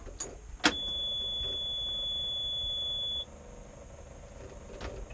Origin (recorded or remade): recorded